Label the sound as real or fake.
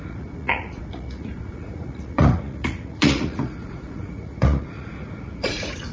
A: fake